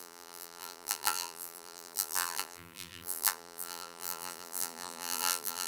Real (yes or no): no